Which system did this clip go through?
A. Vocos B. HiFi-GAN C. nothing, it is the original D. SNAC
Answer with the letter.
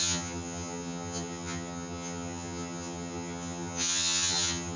B